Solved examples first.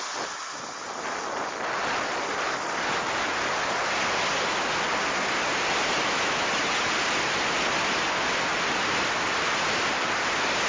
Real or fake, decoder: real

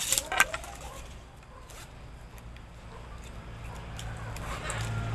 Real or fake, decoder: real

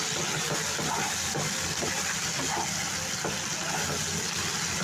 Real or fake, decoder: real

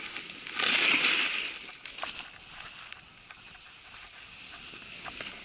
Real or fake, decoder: real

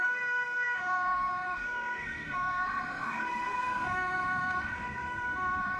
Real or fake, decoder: fake, autoencoder, DAC-VAE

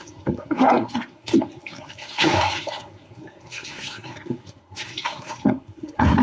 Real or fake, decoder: fake, codec, SNAC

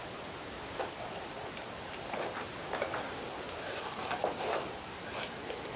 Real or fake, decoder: real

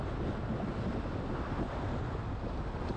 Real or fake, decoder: real